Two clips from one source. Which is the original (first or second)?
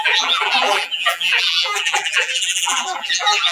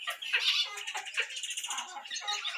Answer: second